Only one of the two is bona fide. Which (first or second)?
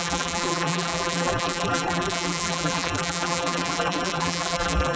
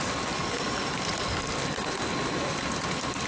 second